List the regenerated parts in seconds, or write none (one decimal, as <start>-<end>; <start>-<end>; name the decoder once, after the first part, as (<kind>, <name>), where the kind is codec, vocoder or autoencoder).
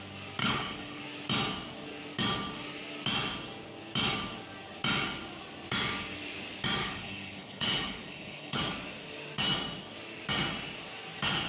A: 0.4-1.0 (codec, HILCodec); 6.8-8.6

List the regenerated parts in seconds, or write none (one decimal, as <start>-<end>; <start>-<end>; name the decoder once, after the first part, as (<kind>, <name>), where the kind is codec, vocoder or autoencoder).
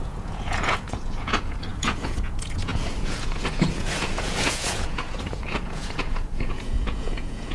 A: 0.0-7.5 (vocoder, Vocos)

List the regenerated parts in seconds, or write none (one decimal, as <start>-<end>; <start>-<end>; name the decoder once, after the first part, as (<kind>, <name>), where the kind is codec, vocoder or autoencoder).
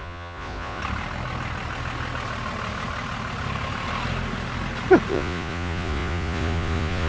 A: 0.0-0.8 (vocoder, Vocos); 5.1-7.1